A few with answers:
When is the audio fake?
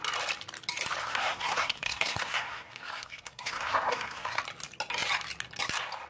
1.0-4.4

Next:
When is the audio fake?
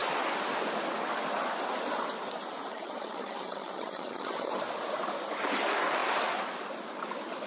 2.7-4.5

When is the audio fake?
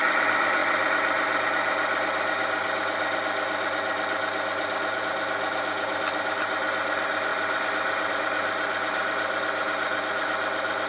none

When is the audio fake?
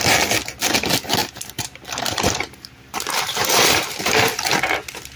1.2-4.3